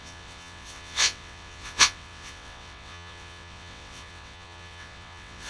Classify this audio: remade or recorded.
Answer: remade